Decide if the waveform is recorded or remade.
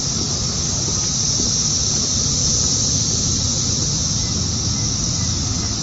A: remade